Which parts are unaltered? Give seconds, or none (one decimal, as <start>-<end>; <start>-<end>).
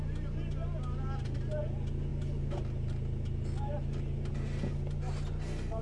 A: 0.0-5.8